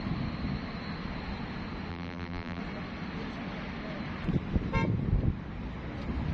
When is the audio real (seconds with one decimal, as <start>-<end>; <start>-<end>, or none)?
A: 0.0-1.9; 2.6-6.3